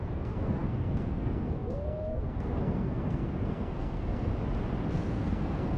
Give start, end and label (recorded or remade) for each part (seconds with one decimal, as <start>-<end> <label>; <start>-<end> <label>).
0.0-4.3 remade; 4.3-4.9 recorded; 4.9-5.8 remade